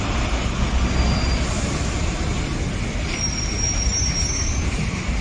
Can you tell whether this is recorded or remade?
recorded